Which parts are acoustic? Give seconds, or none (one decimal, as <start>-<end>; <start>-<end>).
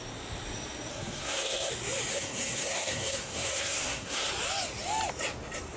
0.0-0.9; 1.7-2.1; 4.3-5.8